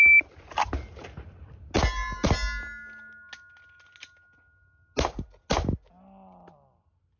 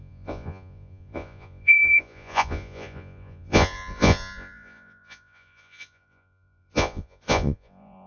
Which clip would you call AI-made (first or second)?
second